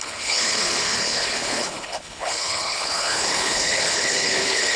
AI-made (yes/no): yes